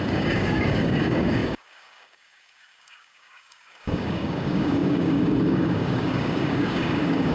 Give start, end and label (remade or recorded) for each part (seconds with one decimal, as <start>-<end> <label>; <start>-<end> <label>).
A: 0.0-7.3 remade